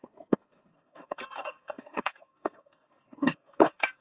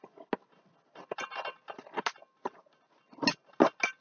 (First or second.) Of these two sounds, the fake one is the first